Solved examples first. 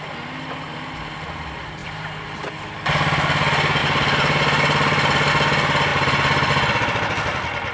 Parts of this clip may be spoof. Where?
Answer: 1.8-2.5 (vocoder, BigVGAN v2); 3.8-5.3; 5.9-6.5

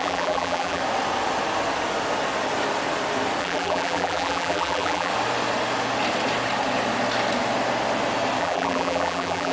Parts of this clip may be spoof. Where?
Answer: 0.0-0.8 (vocoder, BigVGAN v2); 3.4-5.1; 8.4-9.5

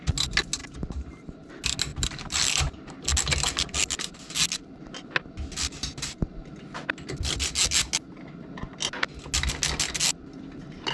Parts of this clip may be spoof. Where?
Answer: 0.6-1.5 (vocoder, BigVGAN v2); 1.9-2.9

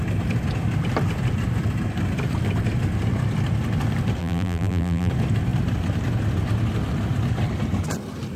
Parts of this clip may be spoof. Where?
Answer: 4.2-5.1 (vocoder, BigVGAN v2)

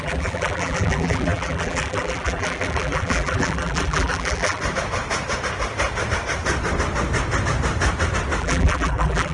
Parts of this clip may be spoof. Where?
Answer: 0.0-4.6 (vocoder, BigVGAN v2); 8.4-9.3